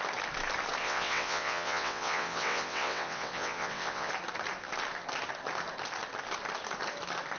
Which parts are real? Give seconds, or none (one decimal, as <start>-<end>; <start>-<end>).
0.0-0.8; 4.1-7.4

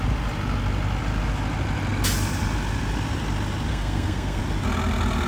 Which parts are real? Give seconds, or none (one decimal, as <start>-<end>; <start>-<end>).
0.0-3.7; 4.4-5.3

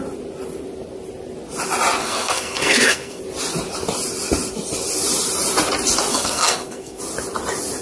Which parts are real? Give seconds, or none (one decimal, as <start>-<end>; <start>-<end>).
0.0-2.0; 3.2-6.1; 7.0-7.8

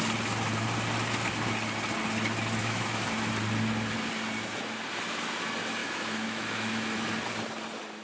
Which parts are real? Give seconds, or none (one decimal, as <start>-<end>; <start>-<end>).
0.0-2.6; 3.3-5.8; 7.1-8.0